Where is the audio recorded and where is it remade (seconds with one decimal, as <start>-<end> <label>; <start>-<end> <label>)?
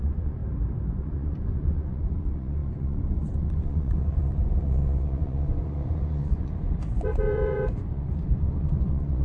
0.0-0.4 remade; 0.4-1.0 recorded; 1.0-9.2 remade